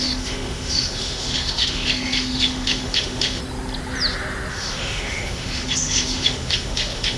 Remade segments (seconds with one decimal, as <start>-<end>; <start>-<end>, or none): 0.0-3.4; 4.5-7.2